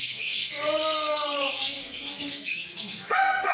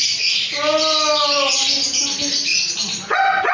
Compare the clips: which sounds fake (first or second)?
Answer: first